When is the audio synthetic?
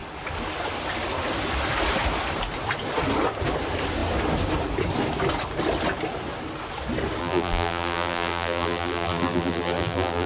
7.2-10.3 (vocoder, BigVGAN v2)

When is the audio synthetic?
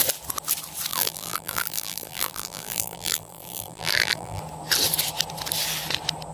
0.9-4.4 (vocoder, BigVGAN v2)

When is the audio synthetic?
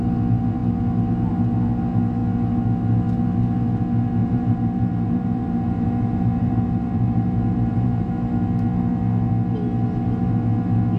4.2-8.1 (vocoder, BigVGAN v2)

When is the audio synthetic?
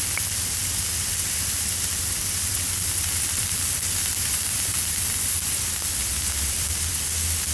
0.6-4.7 (vocoder, BigVGAN v2); 6.0-6.9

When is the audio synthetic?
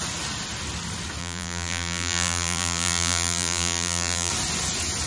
1.2-4.3 (vocoder, BigVGAN v2)